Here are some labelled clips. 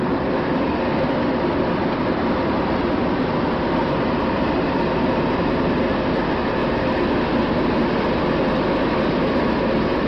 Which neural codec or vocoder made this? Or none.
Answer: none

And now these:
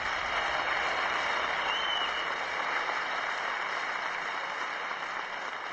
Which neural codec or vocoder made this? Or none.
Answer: none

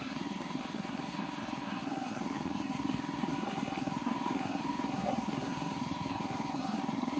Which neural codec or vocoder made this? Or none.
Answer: codec, SNAC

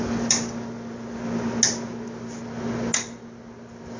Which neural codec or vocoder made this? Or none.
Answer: none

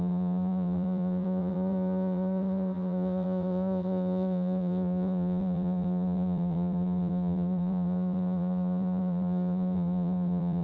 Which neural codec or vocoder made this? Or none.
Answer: vocoder, BigVGAN v2